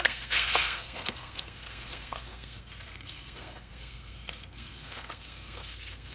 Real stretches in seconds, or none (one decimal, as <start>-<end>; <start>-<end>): none